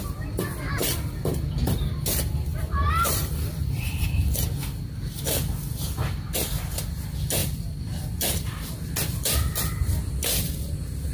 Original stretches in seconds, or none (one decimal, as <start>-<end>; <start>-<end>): 0.0-0.8; 1.9-2.5; 4.4-7.4; 8.7-11.1